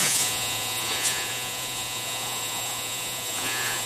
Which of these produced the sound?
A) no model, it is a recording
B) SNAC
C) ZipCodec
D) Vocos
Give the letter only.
D